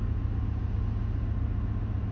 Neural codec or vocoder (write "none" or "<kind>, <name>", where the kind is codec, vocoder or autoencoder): none